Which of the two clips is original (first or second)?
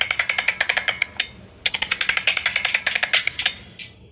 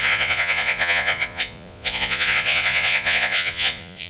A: first